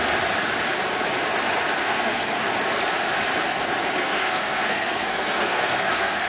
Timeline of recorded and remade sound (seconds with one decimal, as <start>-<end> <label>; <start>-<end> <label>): 0.0-1.8 recorded; 1.8-2.4 remade; 2.4-4.0 recorded; 4.0-6.3 remade